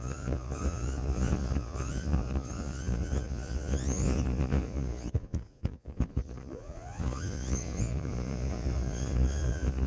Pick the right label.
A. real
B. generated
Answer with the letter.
B